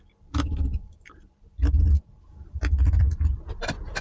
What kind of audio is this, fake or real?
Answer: fake